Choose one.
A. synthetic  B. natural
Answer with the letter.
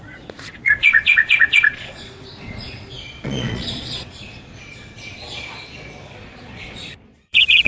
A